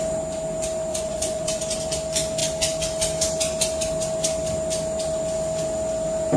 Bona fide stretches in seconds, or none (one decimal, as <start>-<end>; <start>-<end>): 0.0-0.9; 1.6-6.4